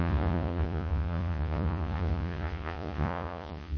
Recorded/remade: remade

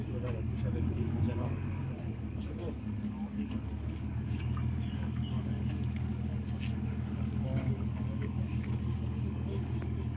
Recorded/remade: remade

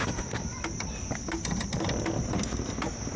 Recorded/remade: recorded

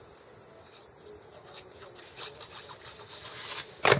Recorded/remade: recorded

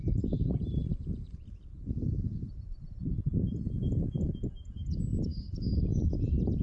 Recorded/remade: remade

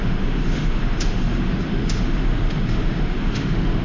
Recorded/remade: remade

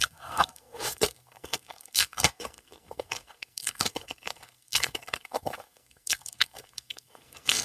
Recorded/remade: remade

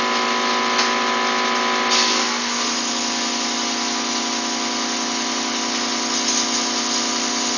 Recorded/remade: recorded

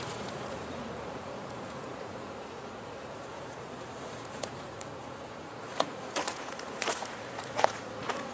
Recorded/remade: remade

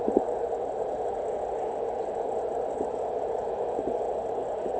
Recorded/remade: recorded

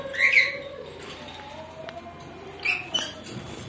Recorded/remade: recorded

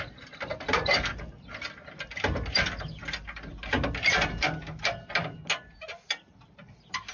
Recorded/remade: recorded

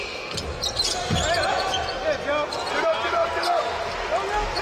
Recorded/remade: recorded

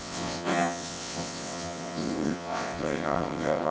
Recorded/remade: remade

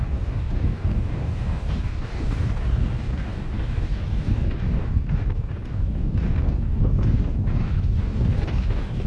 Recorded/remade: remade